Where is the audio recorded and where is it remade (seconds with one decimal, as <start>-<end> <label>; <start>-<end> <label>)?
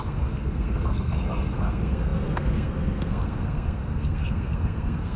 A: 0.0-5.2 remade